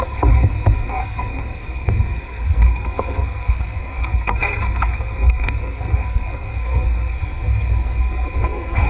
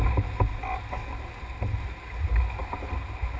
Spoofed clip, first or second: first